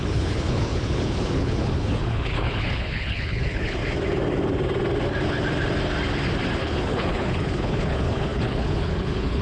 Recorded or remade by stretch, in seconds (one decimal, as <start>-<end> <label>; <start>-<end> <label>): 0.0-3.8 remade; 3.8-6.6 recorded; 6.6-9.4 remade